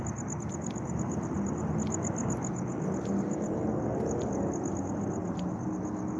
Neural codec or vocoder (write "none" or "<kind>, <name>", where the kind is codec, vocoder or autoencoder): none